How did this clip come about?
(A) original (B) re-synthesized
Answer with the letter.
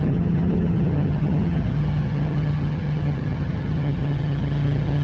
B